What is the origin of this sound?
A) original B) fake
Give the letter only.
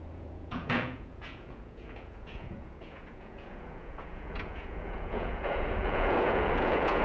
B